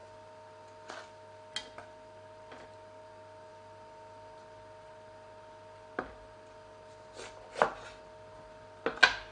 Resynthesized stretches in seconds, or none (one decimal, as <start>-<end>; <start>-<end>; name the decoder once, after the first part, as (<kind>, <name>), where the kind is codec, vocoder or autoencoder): none

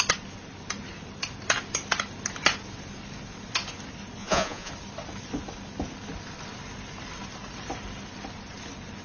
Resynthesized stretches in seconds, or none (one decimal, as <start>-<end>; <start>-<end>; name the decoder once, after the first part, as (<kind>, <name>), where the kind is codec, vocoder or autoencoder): 4.2-4.7 (vocoder, Vocos)

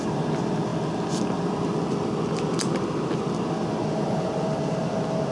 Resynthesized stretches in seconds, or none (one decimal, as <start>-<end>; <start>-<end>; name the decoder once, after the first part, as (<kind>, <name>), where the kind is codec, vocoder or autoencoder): none

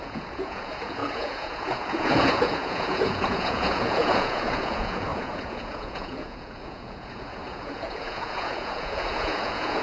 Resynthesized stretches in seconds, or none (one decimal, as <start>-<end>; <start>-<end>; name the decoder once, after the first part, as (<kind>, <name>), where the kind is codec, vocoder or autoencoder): 0.0-9.8 (vocoder, Vocos)

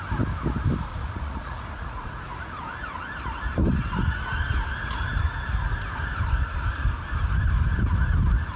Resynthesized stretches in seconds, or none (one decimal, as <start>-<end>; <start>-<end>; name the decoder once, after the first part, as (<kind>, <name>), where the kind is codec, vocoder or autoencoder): 0.9-2.5 (vocoder, Vocos)